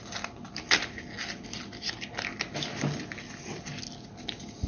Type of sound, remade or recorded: recorded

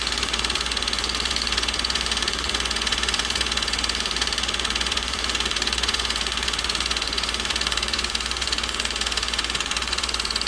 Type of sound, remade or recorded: remade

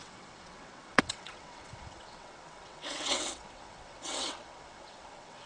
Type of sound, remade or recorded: remade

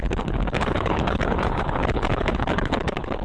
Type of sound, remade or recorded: remade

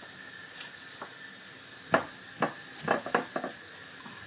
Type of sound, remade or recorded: recorded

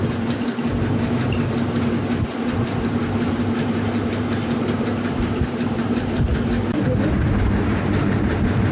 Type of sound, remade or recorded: remade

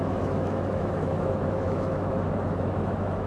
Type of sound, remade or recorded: remade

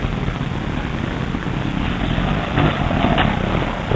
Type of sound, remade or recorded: recorded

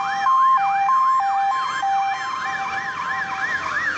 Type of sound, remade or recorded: recorded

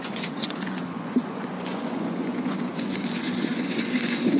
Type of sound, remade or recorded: remade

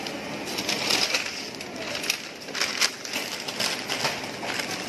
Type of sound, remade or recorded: recorded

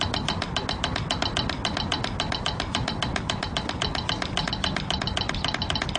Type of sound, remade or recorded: recorded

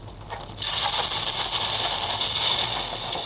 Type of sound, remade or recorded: recorded